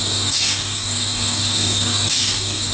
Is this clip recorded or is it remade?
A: remade